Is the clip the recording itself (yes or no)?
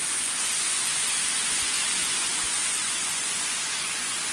no